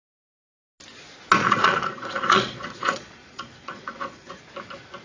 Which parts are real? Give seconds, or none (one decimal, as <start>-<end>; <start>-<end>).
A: 0.0-1.4; 4.4-5.0